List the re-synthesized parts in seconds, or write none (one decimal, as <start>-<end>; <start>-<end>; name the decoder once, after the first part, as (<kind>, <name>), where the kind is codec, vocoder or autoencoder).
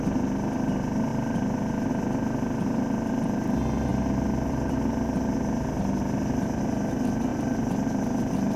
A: 7.3-8.6 (vocoder, BigVGAN v2)